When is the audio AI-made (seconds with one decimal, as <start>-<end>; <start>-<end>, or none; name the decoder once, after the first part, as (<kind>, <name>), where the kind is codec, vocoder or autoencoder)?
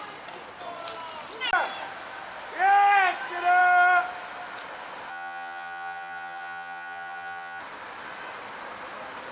5.1-7.6 (vocoder, HiFi-GAN)